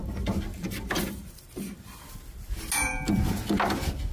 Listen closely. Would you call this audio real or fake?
real